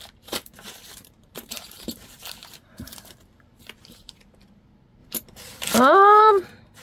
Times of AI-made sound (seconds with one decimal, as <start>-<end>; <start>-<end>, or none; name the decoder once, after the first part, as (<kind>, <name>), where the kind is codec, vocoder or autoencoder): 0.0-6.8 (vocoder, BigVGAN v2)